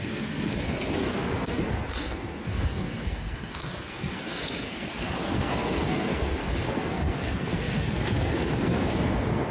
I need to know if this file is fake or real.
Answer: fake